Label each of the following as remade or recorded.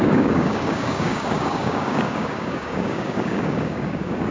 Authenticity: remade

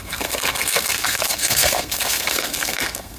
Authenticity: remade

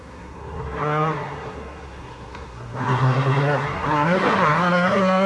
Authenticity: remade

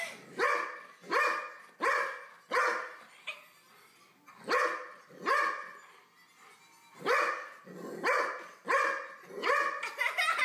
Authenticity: recorded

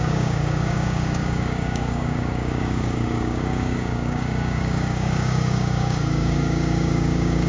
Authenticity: remade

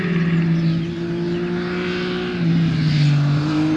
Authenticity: recorded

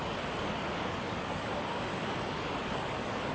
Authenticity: remade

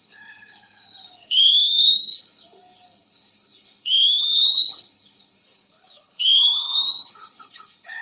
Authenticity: remade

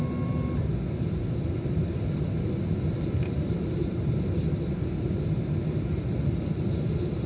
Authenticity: recorded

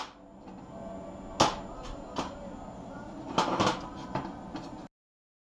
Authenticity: recorded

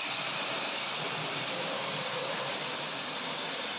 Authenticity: recorded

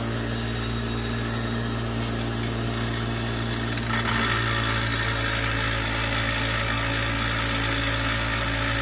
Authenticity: recorded